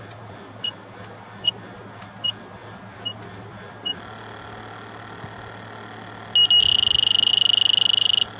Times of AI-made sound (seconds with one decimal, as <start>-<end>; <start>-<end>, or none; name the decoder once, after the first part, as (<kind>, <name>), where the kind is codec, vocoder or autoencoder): none